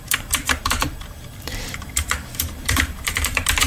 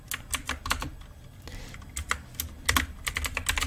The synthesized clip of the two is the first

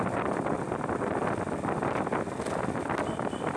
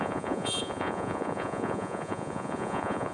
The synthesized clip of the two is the second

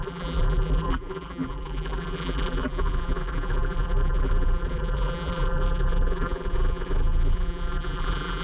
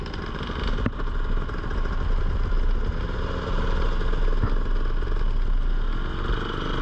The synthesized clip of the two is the first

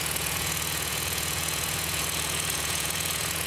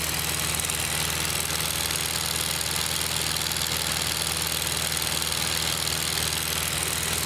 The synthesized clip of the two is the first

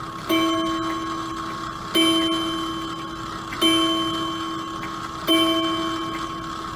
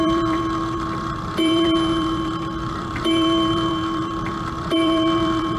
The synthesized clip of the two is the second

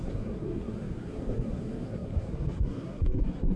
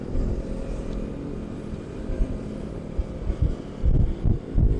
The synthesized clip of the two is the first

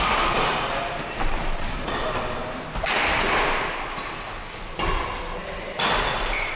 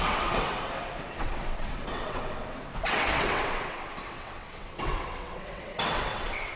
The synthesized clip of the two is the second